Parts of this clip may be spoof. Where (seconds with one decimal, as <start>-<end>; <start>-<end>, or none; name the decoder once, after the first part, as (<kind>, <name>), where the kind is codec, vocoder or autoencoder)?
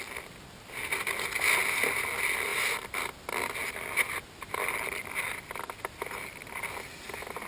none